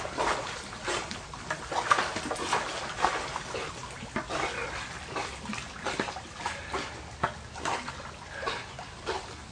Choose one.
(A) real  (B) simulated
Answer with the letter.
A